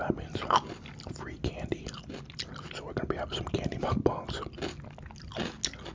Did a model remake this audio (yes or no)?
no